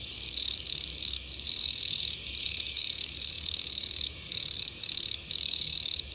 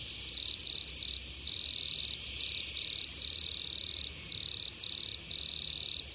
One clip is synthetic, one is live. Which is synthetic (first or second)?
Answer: first